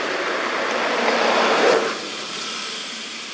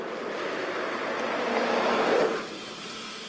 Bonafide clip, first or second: second